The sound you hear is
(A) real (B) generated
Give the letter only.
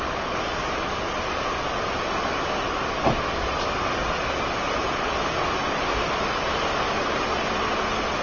A